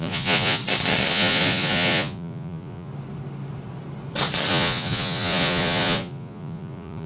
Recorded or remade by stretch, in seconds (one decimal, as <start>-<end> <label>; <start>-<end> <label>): 0.0-0.6 remade; 0.6-1.1 recorded; 1.1-2.9 remade; 2.9-4.5 recorded; 4.5-7.1 remade